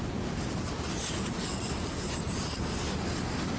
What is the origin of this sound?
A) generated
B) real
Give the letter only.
B